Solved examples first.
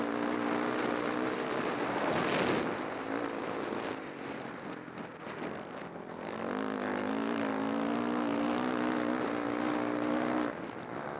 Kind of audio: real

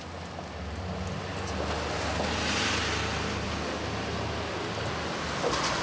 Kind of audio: real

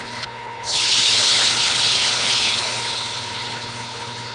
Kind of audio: fake